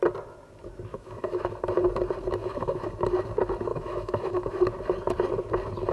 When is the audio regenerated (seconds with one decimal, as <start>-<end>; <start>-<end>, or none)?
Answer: 0.9-1.5; 2.4-2.9; 3.7-4.6